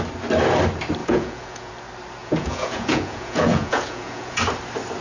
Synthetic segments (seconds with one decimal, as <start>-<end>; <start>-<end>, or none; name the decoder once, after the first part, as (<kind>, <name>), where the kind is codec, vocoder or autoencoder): 1.0-1.7 (vocoder, Vocos); 2.2-4.4